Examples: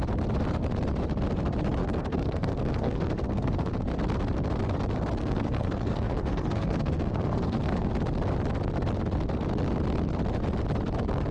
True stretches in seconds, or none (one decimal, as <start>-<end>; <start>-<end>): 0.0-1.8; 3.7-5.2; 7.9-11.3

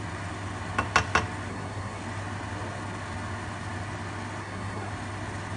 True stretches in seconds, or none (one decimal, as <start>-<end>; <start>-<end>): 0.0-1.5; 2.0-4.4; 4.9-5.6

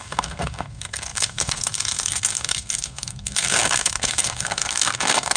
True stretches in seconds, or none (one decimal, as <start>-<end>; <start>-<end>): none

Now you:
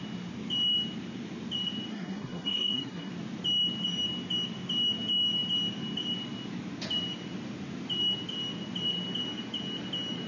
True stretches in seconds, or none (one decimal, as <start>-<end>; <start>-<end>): 0.0-1.9; 3.1-10.3